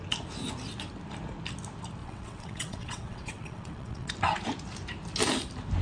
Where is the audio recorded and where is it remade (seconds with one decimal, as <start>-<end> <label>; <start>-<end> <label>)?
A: 0.0-2.0 recorded; 2.0-4.1 remade; 4.1-5.8 recorded